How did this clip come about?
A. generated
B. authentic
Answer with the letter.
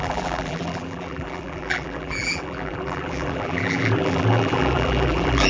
A